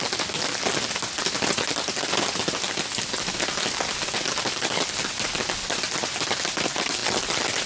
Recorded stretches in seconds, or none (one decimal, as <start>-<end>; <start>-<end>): 0.0-7.7